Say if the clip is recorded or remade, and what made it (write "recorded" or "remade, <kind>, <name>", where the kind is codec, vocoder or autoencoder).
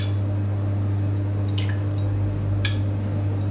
recorded